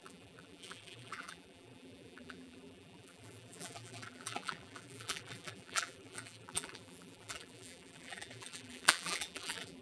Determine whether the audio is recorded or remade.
remade